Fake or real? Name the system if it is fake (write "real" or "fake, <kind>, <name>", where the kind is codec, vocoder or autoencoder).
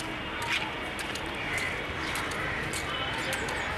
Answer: real